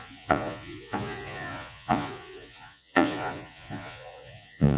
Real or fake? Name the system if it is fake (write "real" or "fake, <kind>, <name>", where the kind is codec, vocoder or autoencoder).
fake, vocoder, Vocos